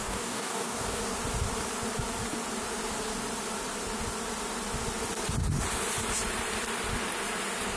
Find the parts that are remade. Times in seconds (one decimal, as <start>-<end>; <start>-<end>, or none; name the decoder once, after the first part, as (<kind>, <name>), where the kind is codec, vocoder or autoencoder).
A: 0.0-1.0 (codec, DAC)